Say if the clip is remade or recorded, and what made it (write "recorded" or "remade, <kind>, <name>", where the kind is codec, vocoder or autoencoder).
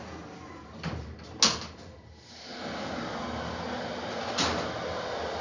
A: recorded